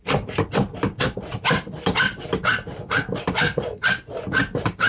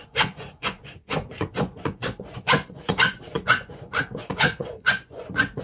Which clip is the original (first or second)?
first